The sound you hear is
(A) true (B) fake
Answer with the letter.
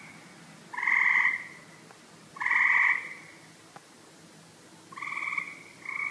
A